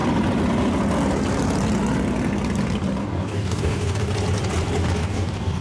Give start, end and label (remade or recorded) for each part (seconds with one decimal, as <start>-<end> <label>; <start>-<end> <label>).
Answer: 0.0-3.0 recorded; 3.0-4.1 remade; 4.1-4.8 recorded; 4.8-5.6 remade